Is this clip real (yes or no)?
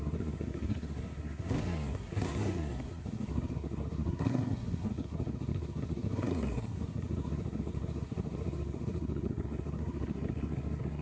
no